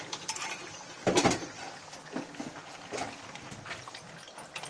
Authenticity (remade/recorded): recorded